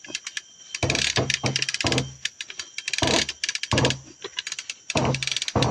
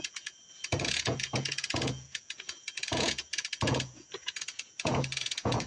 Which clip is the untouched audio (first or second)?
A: first